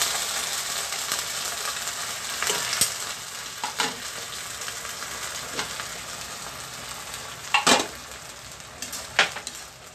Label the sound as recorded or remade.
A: recorded